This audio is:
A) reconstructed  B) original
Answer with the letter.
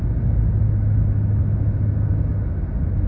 B